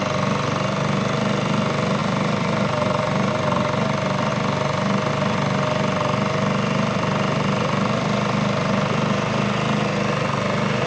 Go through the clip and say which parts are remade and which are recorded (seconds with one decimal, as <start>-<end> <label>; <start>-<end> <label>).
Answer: 0.0-2.0 recorded; 2.0-3.3 remade; 3.3-10.9 recorded